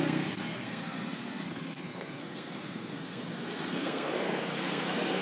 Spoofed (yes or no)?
yes